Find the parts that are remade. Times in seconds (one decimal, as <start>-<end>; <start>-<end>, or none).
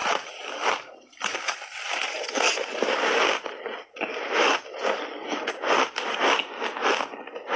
0.0-3.1